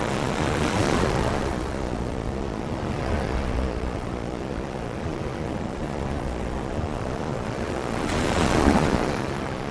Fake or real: fake